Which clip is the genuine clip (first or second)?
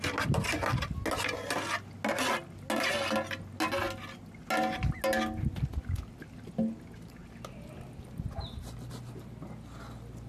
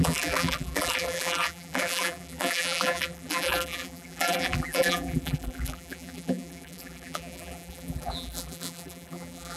first